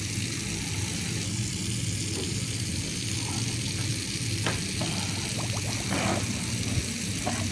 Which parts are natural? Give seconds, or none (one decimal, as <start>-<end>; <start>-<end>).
0.0-7.5